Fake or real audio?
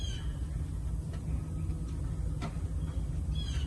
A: real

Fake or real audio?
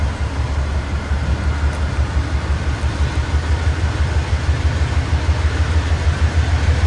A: real